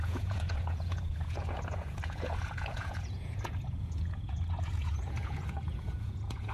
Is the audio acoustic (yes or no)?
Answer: no